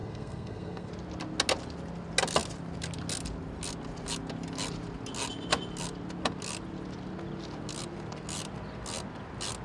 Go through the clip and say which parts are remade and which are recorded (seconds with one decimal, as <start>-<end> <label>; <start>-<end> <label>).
0.0-0.9 remade; 0.9-9.6 recorded